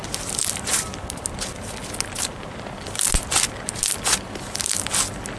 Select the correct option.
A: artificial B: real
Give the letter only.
B